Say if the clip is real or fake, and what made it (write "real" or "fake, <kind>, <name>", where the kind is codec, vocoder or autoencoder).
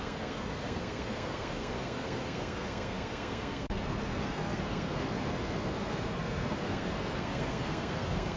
fake, codec, SNAC